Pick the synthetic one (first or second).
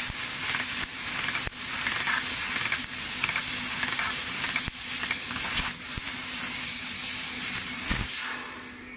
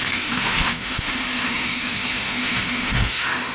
second